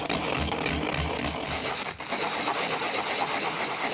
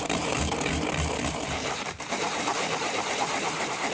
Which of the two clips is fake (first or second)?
second